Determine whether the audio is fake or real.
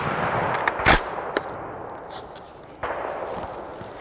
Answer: real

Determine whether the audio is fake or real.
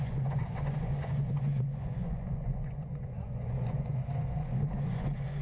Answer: fake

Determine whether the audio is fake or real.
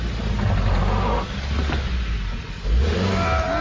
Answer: real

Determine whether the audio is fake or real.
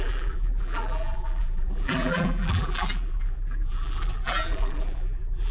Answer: fake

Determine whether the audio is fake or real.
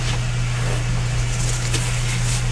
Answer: real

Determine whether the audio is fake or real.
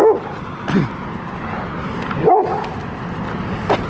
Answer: real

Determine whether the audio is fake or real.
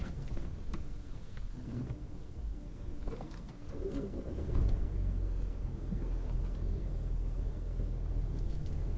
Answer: fake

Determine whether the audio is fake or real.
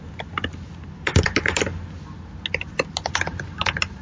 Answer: real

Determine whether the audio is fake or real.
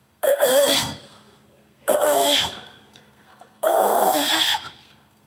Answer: fake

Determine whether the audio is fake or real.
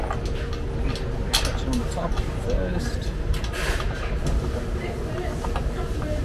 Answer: real